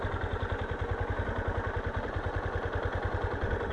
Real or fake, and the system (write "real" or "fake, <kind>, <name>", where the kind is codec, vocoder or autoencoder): real